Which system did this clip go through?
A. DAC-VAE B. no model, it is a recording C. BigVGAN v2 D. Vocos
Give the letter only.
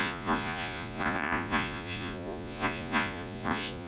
D